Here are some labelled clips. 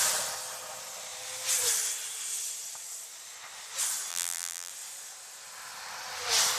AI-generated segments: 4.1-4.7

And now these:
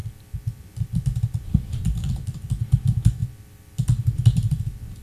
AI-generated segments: none

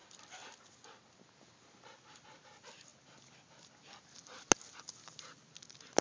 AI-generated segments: none

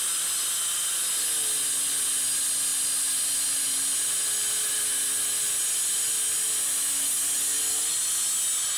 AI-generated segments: none

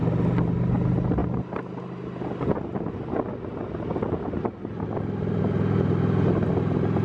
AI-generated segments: none

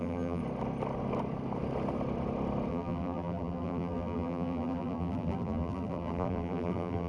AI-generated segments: 0.0-0.4; 2.7-7.1

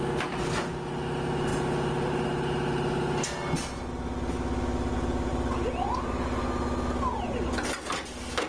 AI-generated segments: none